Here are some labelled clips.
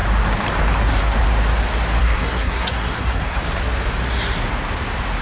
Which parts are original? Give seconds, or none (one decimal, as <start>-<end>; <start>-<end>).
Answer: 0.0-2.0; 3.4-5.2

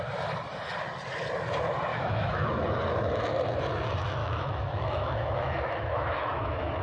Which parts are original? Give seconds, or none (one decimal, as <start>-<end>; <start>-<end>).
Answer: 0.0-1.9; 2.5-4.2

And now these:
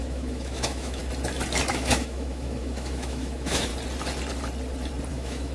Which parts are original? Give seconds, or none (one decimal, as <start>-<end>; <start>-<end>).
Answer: 1.0-1.7; 3.7-5.1

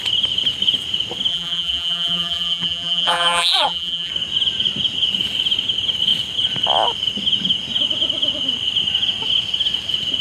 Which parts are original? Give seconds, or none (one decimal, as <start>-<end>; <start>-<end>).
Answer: 0.0-1.3; 4.1-10.2

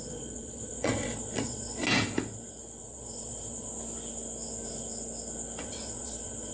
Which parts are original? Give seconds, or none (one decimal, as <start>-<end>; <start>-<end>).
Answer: 1.8-2.8; 3.7-5.6

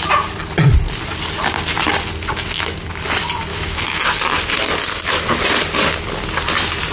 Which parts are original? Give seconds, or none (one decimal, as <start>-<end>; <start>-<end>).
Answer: 0.0-3.5; 4.0-6.9

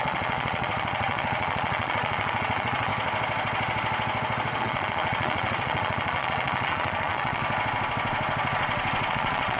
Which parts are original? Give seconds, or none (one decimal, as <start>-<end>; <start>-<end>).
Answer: 2.9-4.6; 7.4-9.1

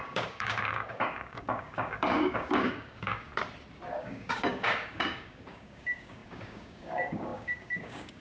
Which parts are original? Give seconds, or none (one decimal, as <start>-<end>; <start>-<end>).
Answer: 3.3-4.0